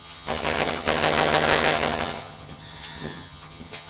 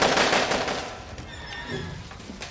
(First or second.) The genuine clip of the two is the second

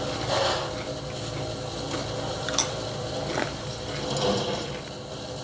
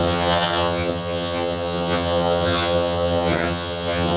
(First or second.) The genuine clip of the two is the first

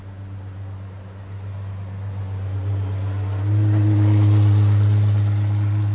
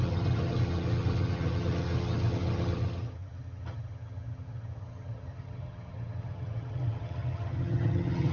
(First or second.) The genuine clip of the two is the first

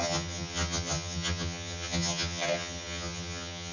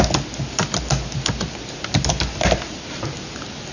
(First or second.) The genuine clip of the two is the second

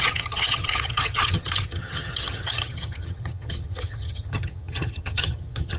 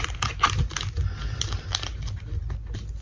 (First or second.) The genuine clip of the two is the second